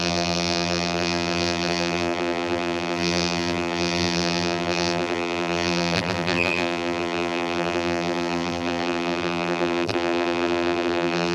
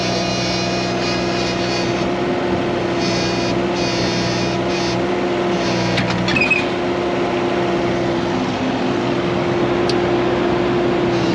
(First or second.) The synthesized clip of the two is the first